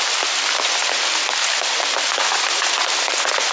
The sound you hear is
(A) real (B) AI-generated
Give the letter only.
A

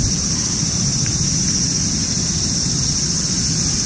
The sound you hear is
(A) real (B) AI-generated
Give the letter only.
B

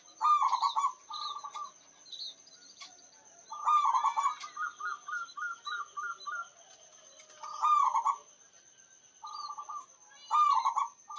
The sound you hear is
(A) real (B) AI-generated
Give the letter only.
A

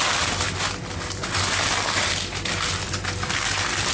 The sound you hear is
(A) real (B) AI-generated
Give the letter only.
A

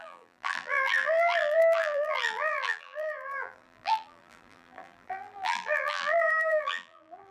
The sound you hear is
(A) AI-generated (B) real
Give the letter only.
A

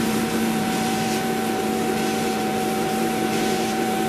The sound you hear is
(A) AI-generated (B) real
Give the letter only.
A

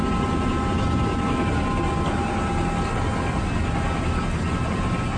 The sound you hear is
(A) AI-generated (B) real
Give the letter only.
B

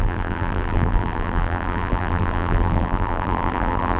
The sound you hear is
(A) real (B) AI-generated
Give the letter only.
B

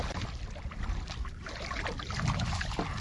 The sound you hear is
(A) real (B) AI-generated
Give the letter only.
A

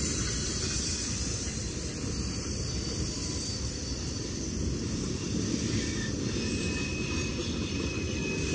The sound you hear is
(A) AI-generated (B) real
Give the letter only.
A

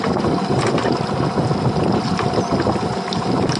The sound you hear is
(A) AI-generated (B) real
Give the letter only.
B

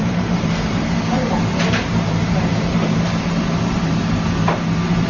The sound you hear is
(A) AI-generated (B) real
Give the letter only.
A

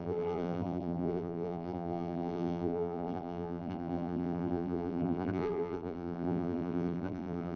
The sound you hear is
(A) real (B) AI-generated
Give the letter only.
B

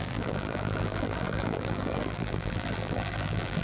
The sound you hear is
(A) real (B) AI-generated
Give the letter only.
B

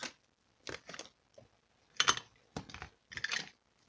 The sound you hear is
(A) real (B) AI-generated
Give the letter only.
A